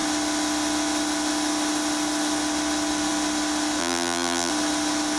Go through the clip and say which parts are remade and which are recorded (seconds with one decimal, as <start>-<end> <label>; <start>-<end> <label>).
0.0-3.8 recorded; 3.8-4.5 remade; 4.5-5.2 recorded